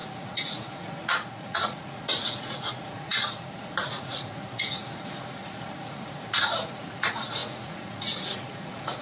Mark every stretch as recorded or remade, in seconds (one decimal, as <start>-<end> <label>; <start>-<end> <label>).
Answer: 0.0-9.0 remade